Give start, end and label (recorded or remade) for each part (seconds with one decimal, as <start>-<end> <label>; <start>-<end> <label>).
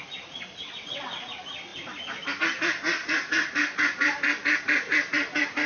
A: 0.0-0.6 recorded; 0.6-1.2 remade; 1.2-5.7 recorded